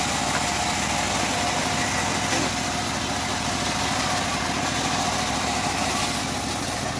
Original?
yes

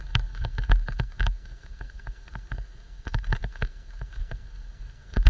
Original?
no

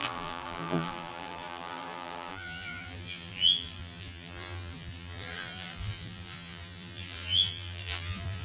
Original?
no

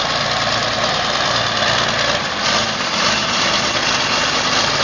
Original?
yes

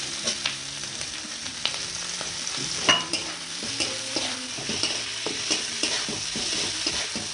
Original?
no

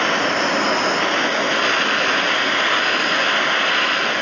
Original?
yes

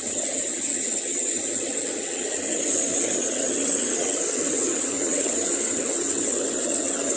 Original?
no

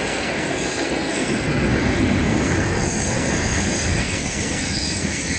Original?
no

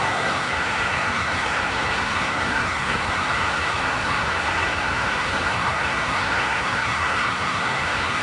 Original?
no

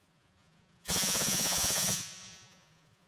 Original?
no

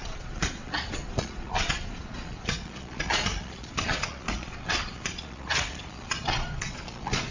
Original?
no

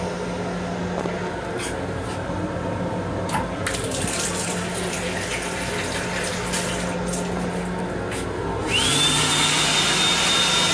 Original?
yes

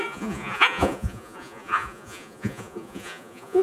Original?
no